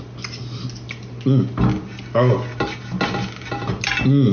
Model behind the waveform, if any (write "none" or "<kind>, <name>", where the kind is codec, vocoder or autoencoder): none